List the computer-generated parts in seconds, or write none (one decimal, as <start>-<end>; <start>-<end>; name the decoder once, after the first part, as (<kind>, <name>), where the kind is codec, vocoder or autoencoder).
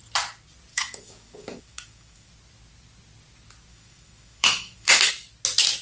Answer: 0.7-2.3 (autoencoder, DAC-VAE); 3.7-5.1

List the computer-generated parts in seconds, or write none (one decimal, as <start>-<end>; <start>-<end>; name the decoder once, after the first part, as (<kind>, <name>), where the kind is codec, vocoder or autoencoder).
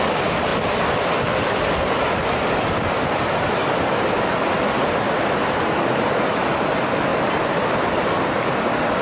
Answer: none